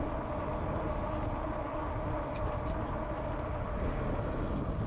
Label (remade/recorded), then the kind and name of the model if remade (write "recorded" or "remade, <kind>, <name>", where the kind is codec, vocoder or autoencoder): recorded